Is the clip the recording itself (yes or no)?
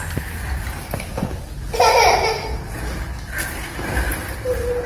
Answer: yes